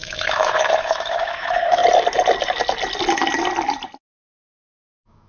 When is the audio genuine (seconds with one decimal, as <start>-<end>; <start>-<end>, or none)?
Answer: 1.8-4.3